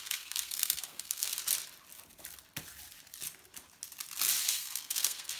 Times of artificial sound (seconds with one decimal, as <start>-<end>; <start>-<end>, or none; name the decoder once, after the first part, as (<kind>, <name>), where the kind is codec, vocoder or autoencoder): 0.0-1.3 (codec, SNAC); 4.5-5.4